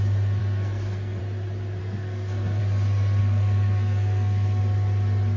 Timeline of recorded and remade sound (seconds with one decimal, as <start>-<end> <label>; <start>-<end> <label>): 0.0-0.4 recorded; 0.4-1.2 remade; 1.2-1.8 recorded; 1.8-2.6 remade; 2.6-3.2 recorded; 3.2-4.6 remade; 4.6-5.4 recorded